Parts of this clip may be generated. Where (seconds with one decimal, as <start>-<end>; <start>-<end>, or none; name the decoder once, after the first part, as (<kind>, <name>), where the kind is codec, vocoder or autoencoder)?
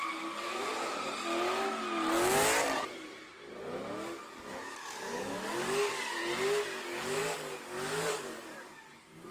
0.0-0.7 (codec, DAC); 4.2-6.2; 6.8-9.3